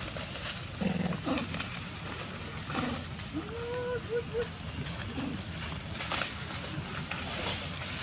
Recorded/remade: recorded